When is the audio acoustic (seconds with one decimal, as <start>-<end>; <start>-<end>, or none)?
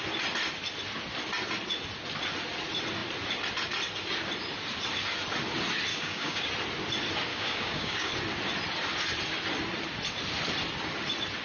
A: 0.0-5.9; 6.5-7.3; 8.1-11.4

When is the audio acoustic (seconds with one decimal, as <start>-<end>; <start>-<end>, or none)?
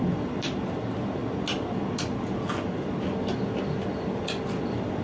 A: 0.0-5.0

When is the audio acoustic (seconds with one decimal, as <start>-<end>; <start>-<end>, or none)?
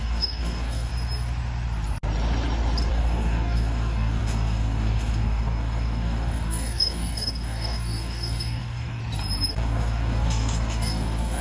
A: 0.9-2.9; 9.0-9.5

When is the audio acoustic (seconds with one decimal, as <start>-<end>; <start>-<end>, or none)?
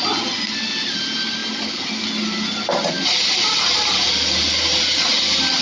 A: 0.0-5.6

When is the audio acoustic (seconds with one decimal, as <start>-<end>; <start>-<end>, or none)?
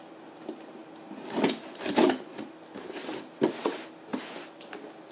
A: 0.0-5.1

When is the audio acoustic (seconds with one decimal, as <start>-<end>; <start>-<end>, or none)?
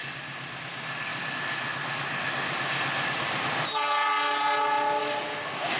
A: 0.0-5.0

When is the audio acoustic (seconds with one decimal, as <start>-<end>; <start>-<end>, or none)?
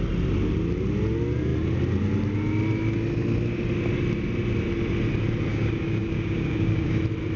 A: 0.0-5.5; 7.0-7.4